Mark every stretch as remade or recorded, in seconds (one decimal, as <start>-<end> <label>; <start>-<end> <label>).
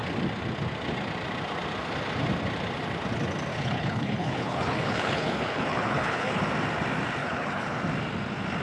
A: 0.0-3.5 recorded; 3.5-6.4 remade; 6.4-7.2 recorded; 7.2-7.8 remade; 7.8-8.6 recorded